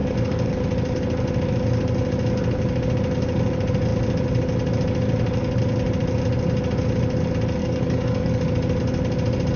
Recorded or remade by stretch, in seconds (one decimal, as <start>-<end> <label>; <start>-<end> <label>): 0.0-0.6 remade; 0.6-7.6 recorded; 7.6-8.3 remade; 8.3-9.6 recorded